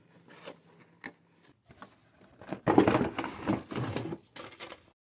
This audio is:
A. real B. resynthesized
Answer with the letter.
A